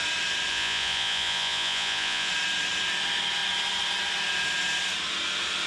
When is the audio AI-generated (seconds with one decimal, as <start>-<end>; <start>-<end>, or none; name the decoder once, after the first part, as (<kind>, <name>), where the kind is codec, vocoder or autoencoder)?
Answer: 0.5-2.3 (vocoder, Vocos)